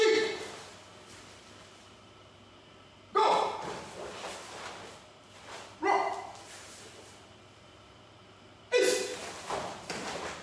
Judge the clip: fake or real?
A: real